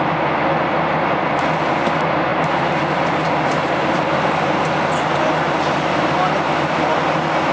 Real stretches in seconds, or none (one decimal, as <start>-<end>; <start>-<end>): 0.0-7.5